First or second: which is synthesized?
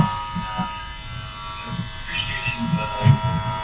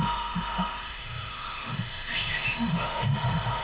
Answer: second